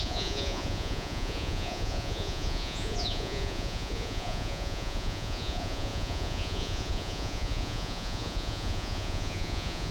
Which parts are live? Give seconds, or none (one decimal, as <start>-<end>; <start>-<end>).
none